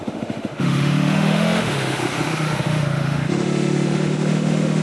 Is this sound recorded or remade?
remade